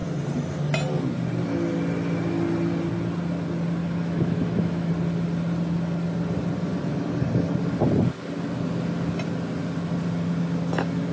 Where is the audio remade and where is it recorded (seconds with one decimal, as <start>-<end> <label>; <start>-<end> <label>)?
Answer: 0.0-3.8 recorded; 3.8-4.9 remade; 4.9-11.1 recorded